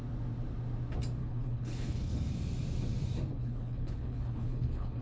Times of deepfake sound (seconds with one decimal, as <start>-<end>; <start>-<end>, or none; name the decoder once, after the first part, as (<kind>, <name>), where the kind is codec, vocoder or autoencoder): 1.2-2.2 (codec, HILCodec); 3.3-5.0